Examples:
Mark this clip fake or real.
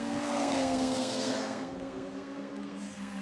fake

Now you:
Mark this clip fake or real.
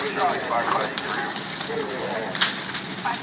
real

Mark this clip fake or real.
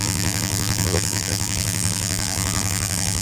fake